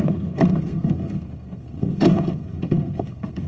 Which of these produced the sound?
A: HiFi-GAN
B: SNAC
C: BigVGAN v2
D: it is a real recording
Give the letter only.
B